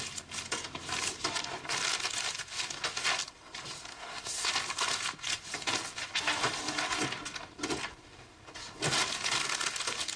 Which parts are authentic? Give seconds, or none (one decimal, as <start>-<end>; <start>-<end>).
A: 0.0-3.9; 4.5-10.2